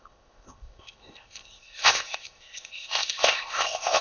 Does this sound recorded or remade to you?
remade